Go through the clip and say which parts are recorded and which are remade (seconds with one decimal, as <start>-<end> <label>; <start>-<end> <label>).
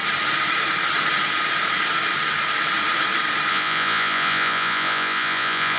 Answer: 0.0-3.5 recorded; 3.5-5.8 remade